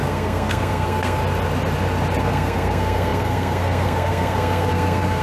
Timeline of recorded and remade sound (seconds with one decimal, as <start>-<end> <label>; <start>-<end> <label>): 0.0-1.2 remade; 1.2-2.2 recorded; 2.2-5.2 remade